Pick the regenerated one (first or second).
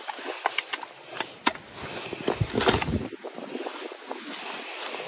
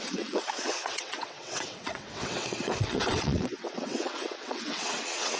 second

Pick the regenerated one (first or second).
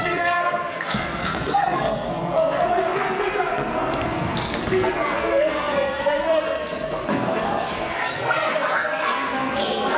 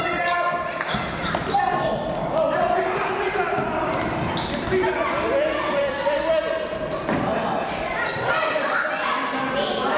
first